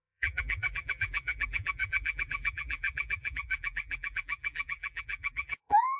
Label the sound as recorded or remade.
remade